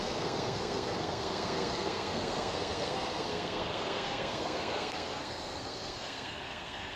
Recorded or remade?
remade